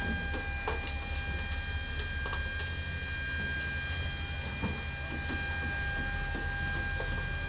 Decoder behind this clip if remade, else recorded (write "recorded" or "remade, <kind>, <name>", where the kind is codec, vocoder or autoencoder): recorded